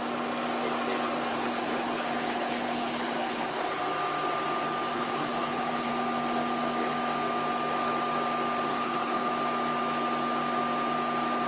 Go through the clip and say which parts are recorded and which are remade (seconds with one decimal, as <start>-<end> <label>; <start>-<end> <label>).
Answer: 0.0-1.3 recorded; 1.3-3.8 remade; 3.8-4.9 recorded; 4.9-5.9 remade; 5.9-8.7 recorded; 8.7-9.3 remade; 9.3-11.5 recorded